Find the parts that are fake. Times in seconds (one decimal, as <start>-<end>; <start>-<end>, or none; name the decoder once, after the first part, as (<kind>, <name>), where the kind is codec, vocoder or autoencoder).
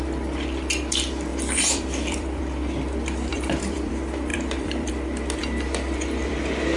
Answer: 1.3-2.4 (vocoder, BigVGAN v2); 3.3-3.9; 4.3-4.9